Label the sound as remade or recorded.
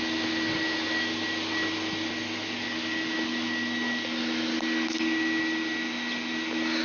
recorded